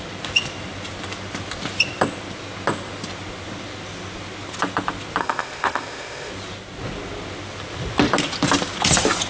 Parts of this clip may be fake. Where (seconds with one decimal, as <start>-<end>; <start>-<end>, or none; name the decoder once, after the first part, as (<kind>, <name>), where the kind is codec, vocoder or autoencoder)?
5.2-6.3 (codec, ZipCodec)